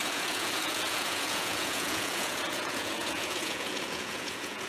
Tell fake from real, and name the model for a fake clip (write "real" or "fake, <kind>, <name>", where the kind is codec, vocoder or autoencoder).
fake, vocoder, Vocos